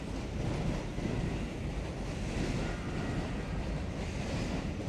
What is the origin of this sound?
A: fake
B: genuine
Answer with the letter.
B